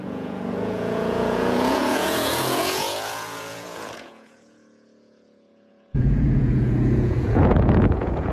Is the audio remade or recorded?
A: remade